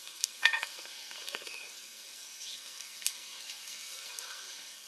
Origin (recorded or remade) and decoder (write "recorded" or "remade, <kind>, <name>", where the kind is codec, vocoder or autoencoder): remade, codec, SNAC